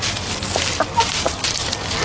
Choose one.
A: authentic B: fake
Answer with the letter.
A